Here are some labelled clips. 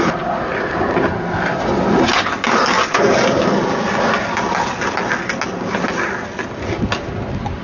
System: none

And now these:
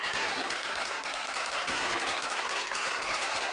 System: codec, SNAC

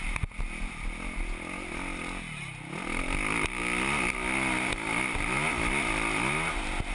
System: none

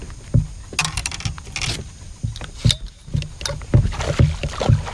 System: none